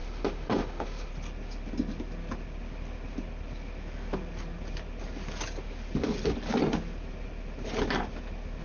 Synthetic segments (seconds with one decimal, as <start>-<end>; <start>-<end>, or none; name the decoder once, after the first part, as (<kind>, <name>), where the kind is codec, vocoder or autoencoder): 0.0-1.1 (autoencoder, DAC-VAE)